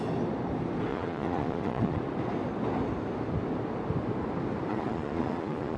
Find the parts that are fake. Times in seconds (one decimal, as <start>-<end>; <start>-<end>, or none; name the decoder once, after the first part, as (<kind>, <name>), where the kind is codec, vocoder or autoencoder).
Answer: 0.9-2.0 (vocoder, Vocos); 4.7-5.8

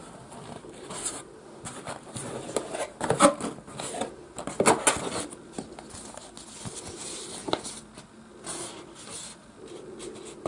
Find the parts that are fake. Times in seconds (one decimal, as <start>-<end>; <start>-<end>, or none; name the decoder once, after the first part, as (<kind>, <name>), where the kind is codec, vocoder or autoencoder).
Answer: none

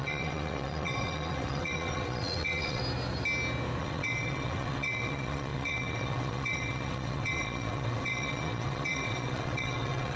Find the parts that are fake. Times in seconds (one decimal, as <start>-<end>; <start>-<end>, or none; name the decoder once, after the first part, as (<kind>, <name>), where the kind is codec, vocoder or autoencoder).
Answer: 0.0-2.8 (vocoder, WaveNeXt); 3.8-10.2

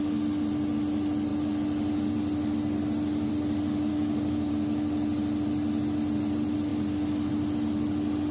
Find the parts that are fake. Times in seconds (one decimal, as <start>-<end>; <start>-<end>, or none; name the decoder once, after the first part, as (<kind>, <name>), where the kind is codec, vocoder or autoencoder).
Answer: 3.9-4.5 (codec, DAC)

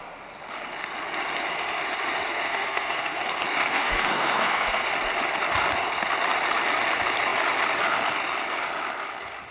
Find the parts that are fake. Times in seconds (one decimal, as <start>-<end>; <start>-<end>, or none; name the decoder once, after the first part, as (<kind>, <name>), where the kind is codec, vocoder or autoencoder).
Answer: 2.3-3.2 (codec, SNAC); 3.6-4.9

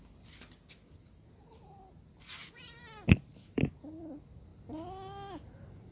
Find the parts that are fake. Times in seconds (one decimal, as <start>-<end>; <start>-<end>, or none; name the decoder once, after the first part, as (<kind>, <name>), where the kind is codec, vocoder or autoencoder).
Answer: none